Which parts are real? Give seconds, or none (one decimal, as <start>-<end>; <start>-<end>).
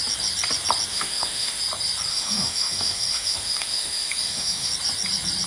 0.0-0.9; 1.6-2.1; 4.7-5.5